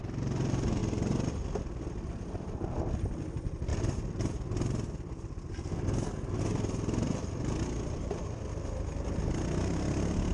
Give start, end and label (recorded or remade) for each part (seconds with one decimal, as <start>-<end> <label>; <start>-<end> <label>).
0.0-10.3 recorded